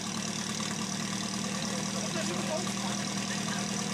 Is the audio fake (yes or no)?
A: no